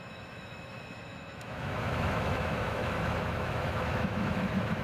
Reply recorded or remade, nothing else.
remade